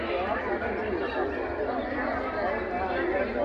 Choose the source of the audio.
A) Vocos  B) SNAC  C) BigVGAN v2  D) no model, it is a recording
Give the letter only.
D